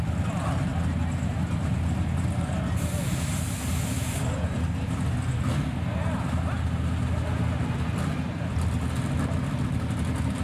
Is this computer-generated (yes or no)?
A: no